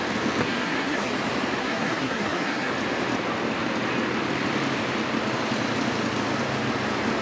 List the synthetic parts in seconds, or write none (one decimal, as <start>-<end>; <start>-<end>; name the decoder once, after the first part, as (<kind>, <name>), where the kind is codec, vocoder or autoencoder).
0.4-1.1 (codec, SNAC); 1.6-2.7